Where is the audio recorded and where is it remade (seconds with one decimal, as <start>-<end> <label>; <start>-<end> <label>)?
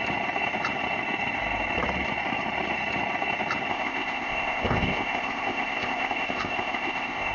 0.0-3.7 recorded; 3.7-7.3 remade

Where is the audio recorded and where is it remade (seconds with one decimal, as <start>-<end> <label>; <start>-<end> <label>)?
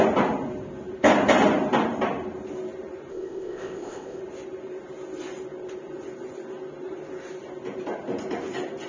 0.0-3.1 recorded; 3.1-4.2 remade; 4.2-8.9 recorded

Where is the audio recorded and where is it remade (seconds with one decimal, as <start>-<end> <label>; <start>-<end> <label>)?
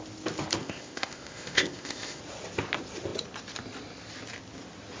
0.0-0.6 recorded; 0.6-2.2 remade; 2.2-5.0 recorded